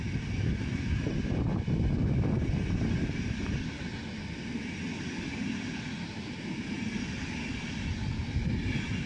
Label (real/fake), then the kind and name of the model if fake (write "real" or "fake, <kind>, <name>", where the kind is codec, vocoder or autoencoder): real